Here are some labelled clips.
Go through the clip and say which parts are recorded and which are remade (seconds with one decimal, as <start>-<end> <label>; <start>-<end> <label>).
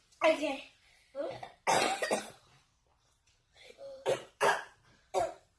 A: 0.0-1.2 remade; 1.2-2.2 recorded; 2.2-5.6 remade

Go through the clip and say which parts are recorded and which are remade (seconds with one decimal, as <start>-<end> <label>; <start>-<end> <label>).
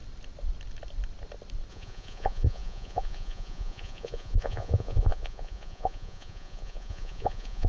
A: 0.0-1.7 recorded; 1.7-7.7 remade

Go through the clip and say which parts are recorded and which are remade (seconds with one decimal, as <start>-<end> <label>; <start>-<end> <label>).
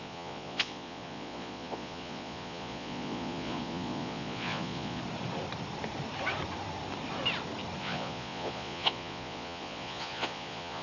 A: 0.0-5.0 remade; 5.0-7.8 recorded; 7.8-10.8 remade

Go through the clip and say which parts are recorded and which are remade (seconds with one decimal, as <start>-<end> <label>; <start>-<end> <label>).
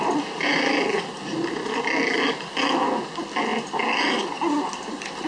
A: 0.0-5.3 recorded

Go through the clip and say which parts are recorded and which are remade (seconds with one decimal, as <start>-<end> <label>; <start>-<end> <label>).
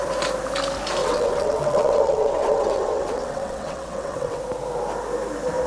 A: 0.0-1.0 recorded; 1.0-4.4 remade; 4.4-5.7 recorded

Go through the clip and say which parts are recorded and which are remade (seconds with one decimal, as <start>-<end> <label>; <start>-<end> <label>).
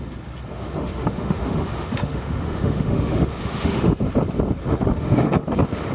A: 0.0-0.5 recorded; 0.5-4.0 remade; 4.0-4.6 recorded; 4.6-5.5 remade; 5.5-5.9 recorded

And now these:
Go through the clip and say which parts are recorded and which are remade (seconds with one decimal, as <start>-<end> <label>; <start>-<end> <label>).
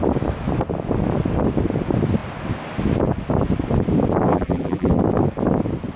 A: 0.0-4.3 recorded; 4.3-4.9 remade; 4.9-6.0 recorded